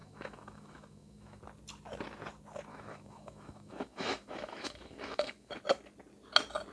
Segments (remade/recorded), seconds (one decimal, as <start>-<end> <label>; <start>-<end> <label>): 0.0-1.4 remade; 1.4-2.7 recorded; 2.7-5.5 remade; 5.5-6.7 recorded